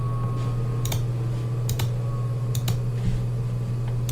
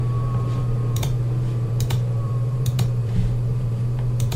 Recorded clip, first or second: first